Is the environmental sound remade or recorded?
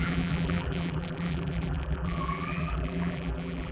remade